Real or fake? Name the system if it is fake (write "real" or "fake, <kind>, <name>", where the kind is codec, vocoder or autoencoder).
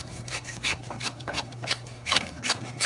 fake, codec, SNAC